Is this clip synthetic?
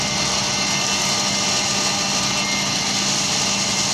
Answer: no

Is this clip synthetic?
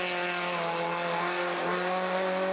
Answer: no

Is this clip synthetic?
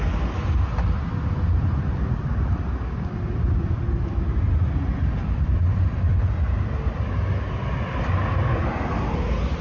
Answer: no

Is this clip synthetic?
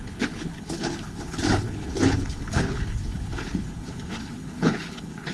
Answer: yes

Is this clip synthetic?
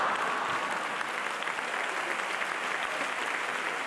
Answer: no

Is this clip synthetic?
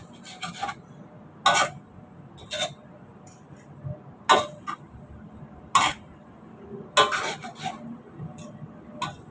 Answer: no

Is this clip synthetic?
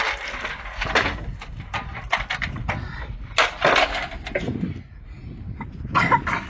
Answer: no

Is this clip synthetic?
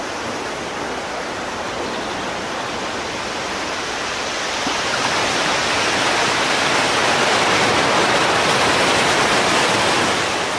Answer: no